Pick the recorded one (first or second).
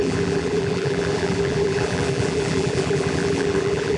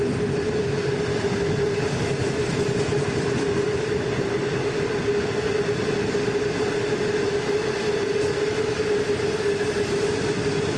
second